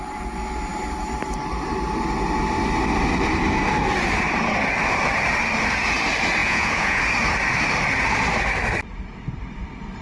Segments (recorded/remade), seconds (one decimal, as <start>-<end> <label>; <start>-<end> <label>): 0.0-6.4 recorded; 6.4-7.0 remade; 7.0-10.0 recorded